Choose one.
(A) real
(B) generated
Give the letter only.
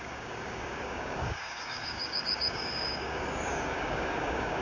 B